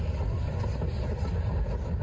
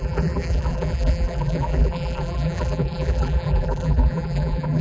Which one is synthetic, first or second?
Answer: second